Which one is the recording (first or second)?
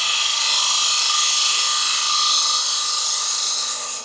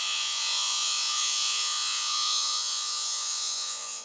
first